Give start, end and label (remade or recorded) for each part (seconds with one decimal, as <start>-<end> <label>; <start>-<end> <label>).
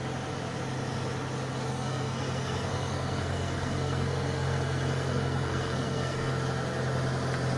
0.0-1.7 recorded; 1.7-6.3 remade; 6.3-7.6 recorded